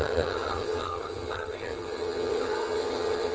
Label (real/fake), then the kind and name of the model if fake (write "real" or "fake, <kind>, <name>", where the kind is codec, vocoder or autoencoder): fake, vocoder, HiFi-GAN